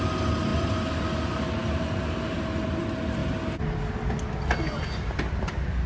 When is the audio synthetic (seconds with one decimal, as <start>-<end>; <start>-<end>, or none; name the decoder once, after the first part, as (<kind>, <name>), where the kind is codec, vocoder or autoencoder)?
none